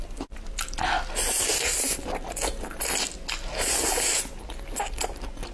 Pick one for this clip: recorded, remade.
recorded